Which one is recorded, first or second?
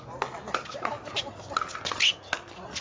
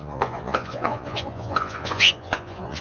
first